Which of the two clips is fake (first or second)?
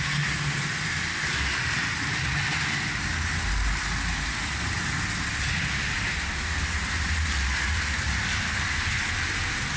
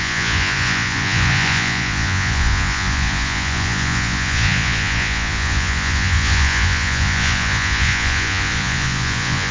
second